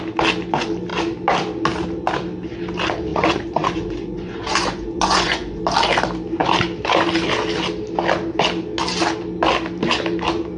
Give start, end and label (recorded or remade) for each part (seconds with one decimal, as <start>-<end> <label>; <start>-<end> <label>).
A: 0.0-3.1 recorded; 3.1-5.6 remade; 5.6-10.6 recorded